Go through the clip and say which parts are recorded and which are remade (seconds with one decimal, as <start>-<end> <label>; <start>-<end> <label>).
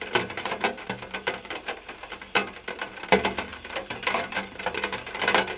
0.0-5.6 remade